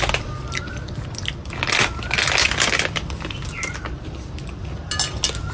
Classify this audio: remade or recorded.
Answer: recorded